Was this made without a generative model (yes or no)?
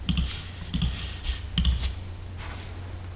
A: yes